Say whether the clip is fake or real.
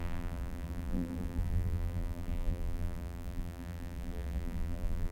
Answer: fake